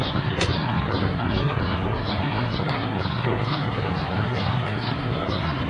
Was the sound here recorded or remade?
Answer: remade